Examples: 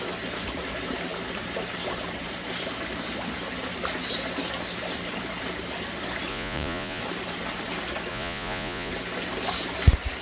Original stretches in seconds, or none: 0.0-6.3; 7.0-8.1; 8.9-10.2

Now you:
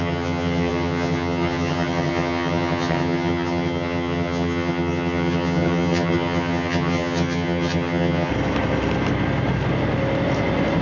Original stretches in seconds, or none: 8.3-10.8

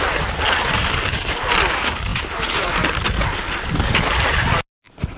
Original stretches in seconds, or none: 0.0-5.2

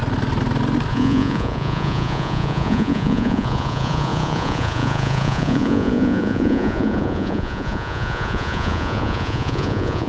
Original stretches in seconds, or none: 0.0-0.9

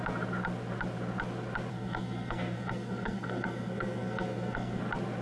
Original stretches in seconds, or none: 0.0-1.7; 4.8-5.2